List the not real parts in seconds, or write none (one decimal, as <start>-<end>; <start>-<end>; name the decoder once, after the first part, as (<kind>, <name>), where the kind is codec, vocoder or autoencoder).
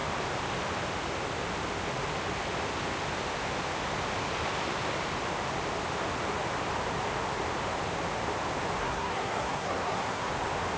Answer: 8.8-10.3 (codec, SNAC)